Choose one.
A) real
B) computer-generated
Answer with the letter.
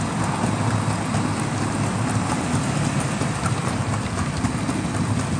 A